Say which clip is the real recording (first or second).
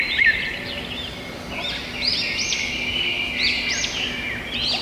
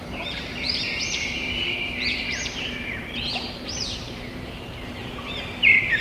first